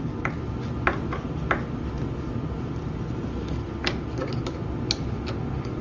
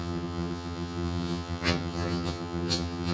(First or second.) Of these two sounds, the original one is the first